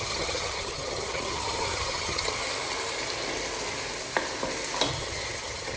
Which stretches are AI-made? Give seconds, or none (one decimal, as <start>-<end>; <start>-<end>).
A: 0.0-2.4; 4.9-5.8